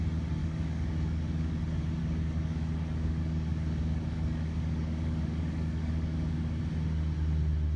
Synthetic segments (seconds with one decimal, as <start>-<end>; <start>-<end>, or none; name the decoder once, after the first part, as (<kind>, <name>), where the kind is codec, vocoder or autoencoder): 0.4-1.6 (codec, DAC); 2.0-6.6